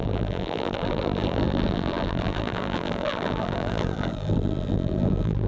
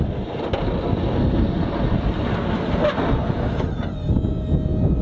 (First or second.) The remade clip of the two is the first